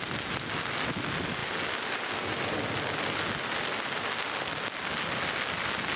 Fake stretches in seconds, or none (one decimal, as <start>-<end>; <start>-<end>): none